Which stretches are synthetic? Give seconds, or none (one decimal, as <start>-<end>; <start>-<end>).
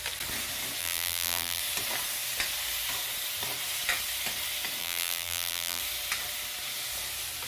0.8-1.6; 4.8-5.8